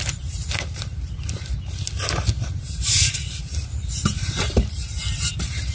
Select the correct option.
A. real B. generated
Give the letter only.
B